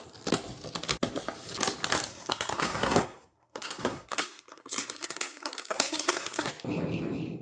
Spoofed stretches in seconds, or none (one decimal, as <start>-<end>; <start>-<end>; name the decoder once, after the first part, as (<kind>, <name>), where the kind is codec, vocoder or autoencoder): 2.1-6.5 (codec, SNAC)